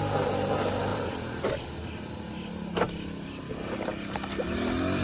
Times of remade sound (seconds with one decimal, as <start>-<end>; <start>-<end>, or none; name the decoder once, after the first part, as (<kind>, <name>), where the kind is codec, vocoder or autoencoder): 0.9-1.5 (vocoder, BigVGAN v2)